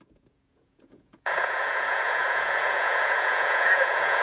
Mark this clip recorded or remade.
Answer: remade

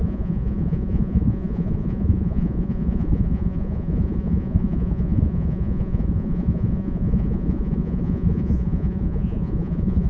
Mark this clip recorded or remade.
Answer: remade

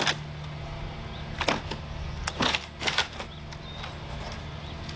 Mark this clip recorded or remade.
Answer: recorded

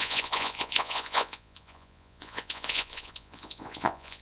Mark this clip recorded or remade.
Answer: remade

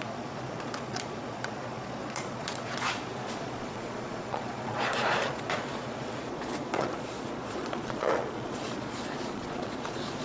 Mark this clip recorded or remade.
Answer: remade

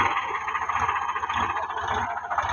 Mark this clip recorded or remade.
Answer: recorded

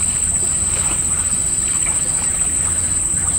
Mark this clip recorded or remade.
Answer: recorded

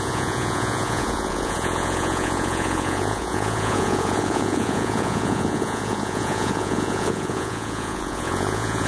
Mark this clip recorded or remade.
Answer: remade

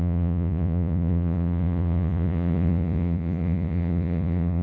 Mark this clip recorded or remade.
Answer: remade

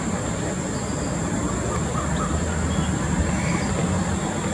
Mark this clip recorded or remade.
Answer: recorded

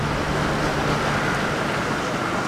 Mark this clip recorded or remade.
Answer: recorded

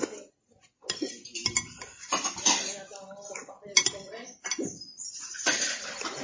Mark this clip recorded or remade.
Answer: recorded